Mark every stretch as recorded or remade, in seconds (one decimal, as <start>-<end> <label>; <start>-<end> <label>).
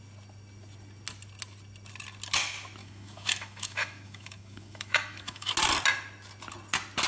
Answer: 0.0-2.8 recorded; 2.8-5.5 remade; 5.5-7.1 recorded